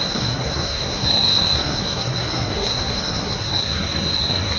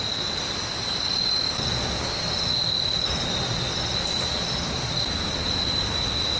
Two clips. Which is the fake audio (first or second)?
first